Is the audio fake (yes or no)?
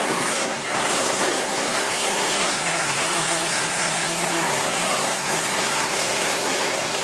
yes